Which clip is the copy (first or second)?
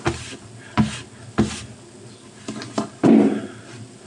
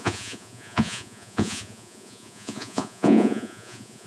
second